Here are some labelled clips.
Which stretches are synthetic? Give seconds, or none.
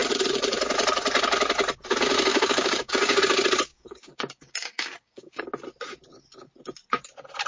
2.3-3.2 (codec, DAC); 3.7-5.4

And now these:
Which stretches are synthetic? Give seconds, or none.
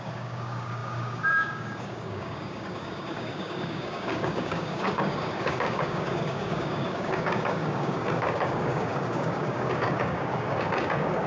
0.0-11.3 (codec, DAC)